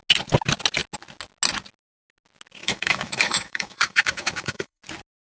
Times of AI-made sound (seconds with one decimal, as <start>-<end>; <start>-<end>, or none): 2.6-4.8